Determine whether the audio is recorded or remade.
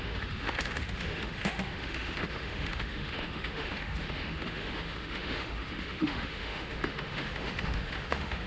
remade